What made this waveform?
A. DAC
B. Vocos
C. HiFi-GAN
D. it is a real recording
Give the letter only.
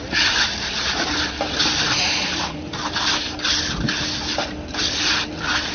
D